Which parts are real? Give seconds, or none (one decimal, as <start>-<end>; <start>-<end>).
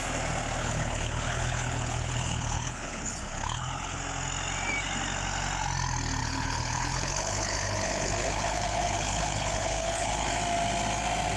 0.0-0.6; 4.0-6.2; 10.3-11.4